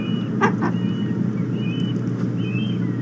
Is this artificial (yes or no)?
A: no